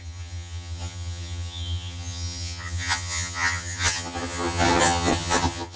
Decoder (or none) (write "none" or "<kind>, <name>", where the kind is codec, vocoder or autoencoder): vocoder, HiFi-GAN